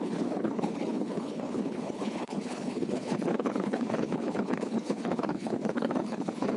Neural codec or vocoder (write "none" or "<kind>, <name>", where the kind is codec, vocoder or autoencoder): codec, HILCodec